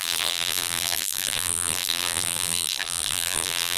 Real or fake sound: fake